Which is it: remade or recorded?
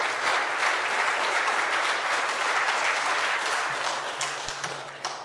recorded